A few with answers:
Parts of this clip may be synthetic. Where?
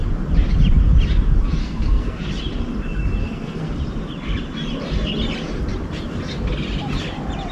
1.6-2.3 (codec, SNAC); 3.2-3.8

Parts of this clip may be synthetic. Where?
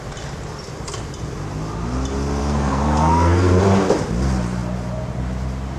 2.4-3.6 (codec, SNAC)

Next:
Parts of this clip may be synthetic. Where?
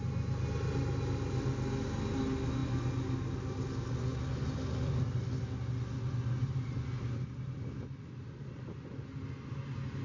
none